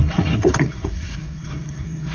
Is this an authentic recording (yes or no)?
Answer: no